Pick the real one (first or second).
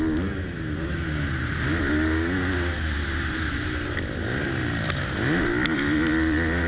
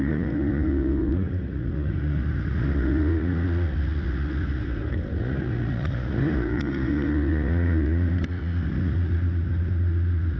first